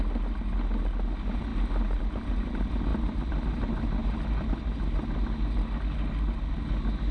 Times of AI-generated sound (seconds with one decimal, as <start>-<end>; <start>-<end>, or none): none